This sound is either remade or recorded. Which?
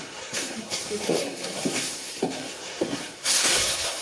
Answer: remade